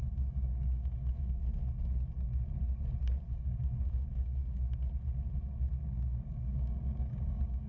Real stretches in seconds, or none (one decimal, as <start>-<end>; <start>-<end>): 1.4-3.3; 4.4-6.1

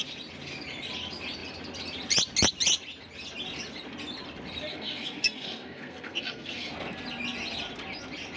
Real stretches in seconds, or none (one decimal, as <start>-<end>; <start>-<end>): 0.0-4.7; 6.7-8.4

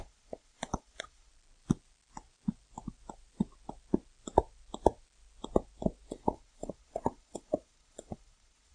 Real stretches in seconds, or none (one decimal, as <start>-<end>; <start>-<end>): 1.3-6.1

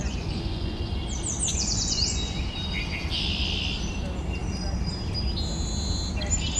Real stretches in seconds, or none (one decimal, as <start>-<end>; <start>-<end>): 0.9-1.5; 2.4-6.6

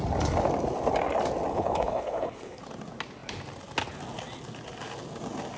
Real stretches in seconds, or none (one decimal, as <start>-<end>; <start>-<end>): 0.0-1.5; 2.6-5.6

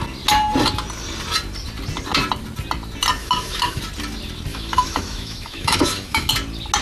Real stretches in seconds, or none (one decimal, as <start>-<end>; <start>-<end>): 0.0-3.2; 3.8-4.5; 6.3-6.8